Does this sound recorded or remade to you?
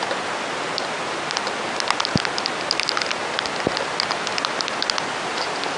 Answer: recorded